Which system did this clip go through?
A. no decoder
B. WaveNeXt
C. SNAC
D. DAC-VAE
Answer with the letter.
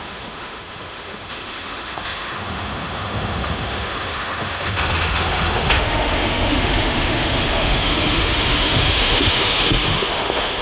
D